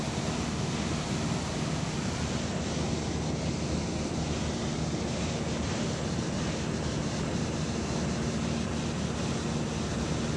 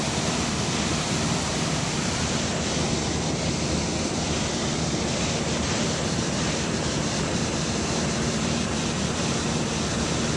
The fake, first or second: second